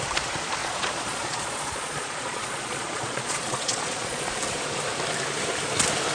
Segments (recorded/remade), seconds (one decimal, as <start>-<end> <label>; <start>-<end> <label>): 0.0-0.6 recorded; 0.6-4.3 remade; 4.3-6.1 recorded